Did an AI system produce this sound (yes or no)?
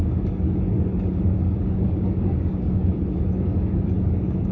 yes